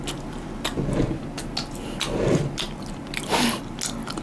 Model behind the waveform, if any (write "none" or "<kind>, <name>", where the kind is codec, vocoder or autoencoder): none